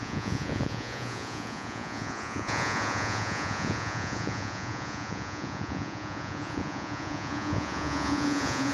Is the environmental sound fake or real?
fake